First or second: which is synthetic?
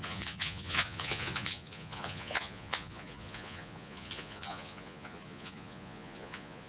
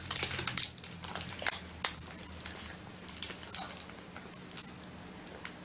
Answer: first